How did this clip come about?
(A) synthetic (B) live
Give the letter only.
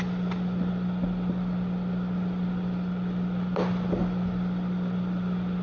B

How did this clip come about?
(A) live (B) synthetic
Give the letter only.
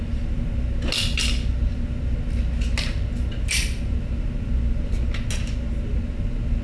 A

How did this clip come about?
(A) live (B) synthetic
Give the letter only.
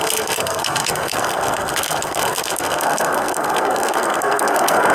B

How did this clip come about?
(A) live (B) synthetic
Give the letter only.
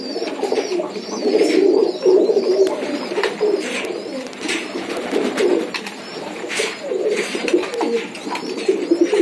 B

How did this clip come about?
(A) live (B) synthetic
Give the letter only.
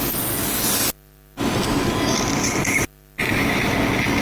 A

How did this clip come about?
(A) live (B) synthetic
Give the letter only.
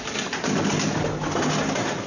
A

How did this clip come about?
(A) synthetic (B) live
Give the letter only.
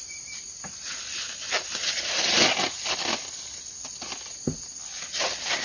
B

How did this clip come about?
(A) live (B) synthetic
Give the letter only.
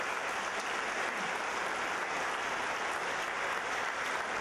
A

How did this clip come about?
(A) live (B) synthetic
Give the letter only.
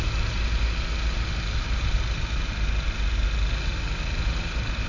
A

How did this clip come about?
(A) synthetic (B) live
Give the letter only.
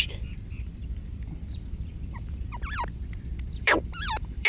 A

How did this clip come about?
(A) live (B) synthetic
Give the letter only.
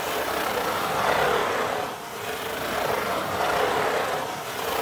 A